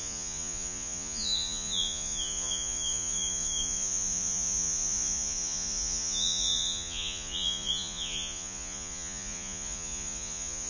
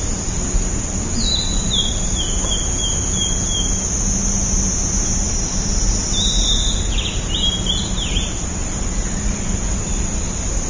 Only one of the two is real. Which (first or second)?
second